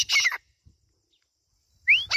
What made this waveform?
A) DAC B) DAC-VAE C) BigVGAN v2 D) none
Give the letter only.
D